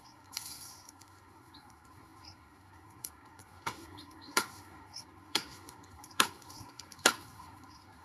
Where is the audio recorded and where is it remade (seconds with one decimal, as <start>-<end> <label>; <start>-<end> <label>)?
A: 0.0-8.0 remade